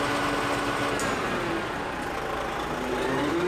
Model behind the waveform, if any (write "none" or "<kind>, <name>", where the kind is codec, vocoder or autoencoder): none